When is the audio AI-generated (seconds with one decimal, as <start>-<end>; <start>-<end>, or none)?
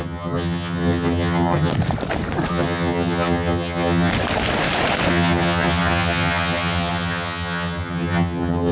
0.0-1.7; 2.5-4.1; 5.1-8.7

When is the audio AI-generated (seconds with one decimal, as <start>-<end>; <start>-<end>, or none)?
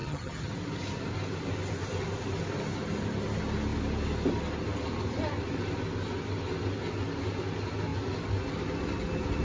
0.0-0.5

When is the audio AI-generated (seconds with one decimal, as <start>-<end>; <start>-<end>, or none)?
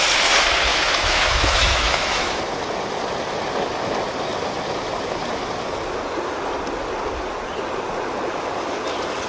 0.7-2.4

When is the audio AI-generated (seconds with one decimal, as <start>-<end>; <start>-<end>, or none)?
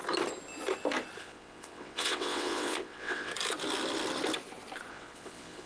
1.2-3.3; 4.9-5.7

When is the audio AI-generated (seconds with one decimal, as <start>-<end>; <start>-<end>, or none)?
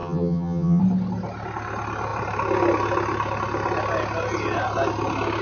0.0-0.8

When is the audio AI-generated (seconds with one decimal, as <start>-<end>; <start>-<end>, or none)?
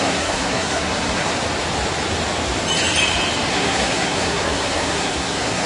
0.0-1.3; 3.5-5.7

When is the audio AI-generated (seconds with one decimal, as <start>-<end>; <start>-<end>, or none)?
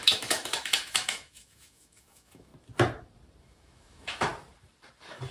0.0-2.5; 3.4-4.3